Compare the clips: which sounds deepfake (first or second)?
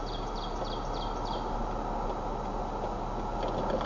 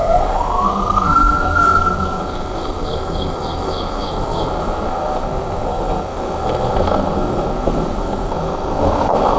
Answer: second